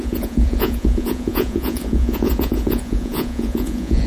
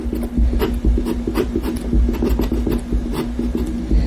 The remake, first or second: first